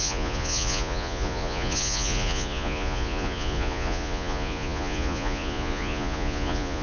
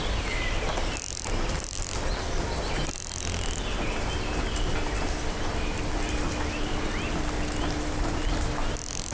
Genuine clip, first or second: second